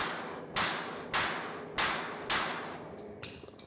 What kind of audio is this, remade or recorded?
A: recorded